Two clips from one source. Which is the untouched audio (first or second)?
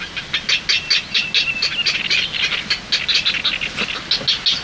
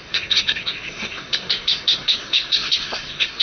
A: first